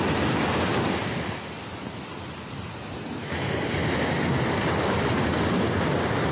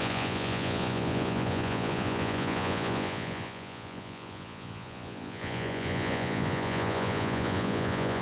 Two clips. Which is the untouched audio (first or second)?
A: first